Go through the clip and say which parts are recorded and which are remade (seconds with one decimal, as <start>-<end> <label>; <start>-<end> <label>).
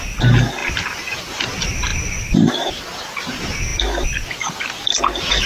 0.0-5.5 remade